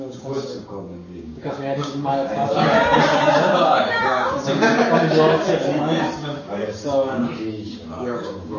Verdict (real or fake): fake